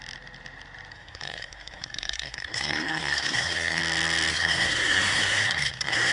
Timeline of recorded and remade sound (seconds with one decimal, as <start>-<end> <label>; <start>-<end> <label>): 0.0-0.9 recorded; 0.9-3.8 remade; 3.8-4.3 recorded; 4.3-6.1 remade